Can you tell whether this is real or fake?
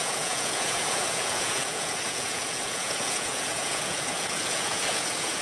fake